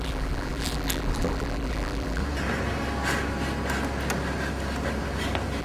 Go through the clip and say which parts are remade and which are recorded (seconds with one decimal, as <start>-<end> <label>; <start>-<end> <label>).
0.0-2.2 remade; 2.2-5.6 recorded